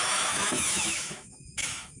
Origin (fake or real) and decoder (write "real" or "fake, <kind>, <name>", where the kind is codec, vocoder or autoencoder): fake, autoencoder, DAC-VAE